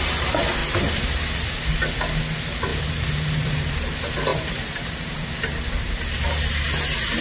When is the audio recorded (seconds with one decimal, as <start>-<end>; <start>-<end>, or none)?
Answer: 0.0-0.6; 1.4-2.7; 3.7-4.3; 5.3-7.2